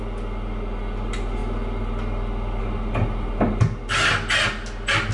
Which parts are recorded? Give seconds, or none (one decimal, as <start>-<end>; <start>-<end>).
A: 0.0-5.1